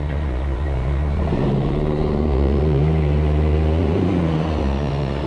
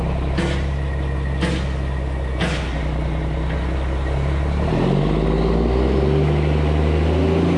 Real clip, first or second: second